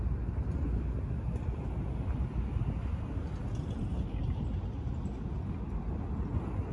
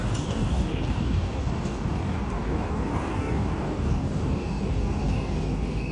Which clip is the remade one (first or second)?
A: second